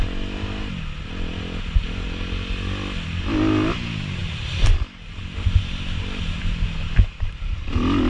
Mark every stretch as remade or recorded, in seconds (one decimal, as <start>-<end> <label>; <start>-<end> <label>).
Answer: 0.0-8.1 recorded